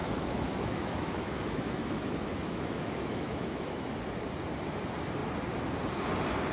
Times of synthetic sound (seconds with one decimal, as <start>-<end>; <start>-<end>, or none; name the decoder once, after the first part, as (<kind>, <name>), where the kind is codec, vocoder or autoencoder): 0.0-3.9 (autoencoder, DAC-VAE)